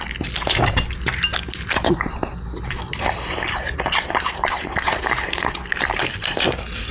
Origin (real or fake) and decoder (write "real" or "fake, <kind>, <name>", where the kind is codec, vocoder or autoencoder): real